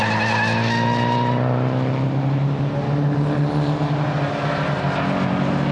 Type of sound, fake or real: real